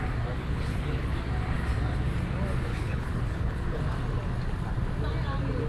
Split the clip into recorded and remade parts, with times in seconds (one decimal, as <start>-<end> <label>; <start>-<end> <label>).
0.0-0.4 recorded; 0.4-1.1 remade; 1.1-2.7 recorded; 2.7-3.8 remade; 3.8-5.7 recorded